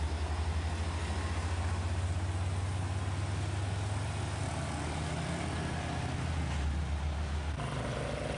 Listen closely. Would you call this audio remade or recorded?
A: recorded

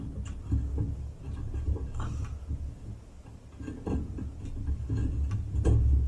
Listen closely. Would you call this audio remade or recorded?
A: recorded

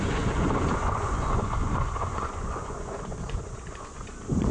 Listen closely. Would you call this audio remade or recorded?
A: remade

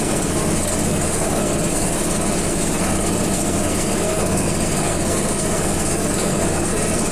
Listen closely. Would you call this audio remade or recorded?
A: remade